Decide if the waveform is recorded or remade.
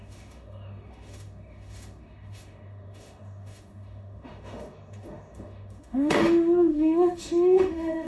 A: remade